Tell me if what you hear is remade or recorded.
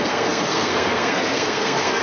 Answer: remade